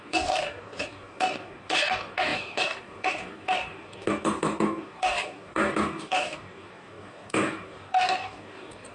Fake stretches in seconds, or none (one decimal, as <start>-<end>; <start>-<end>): 0.0-8.9